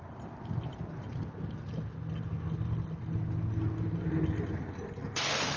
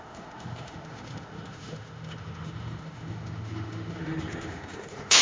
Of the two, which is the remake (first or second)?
second